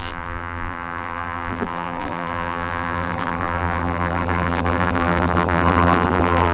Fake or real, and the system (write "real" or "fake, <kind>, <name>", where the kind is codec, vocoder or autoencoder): fake, vocoder, BigVGAN v2